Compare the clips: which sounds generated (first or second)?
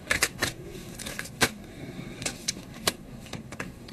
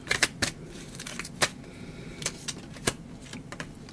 first